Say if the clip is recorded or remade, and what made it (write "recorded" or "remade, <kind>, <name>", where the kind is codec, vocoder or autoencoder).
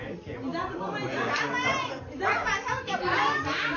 recorded